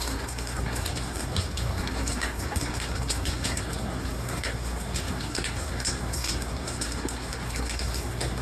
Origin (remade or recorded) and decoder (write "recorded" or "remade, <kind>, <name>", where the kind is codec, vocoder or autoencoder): remade, codec, SNAC